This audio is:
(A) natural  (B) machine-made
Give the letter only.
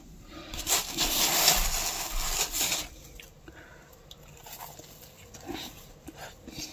A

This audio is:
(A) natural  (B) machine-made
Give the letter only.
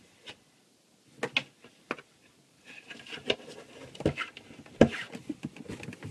A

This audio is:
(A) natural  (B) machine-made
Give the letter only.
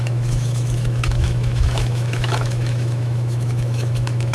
B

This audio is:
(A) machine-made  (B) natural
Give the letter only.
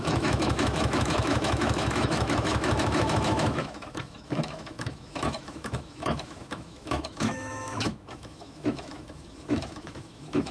A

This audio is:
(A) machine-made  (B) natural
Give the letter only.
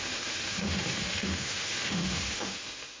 A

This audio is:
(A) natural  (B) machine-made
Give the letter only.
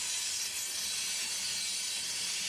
A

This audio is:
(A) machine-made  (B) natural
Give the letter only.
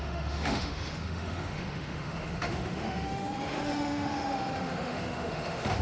A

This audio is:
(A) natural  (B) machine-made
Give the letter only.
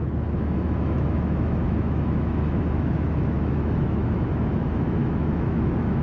B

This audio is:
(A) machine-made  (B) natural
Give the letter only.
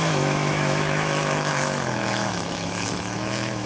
A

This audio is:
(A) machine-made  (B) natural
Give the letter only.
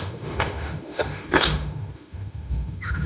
A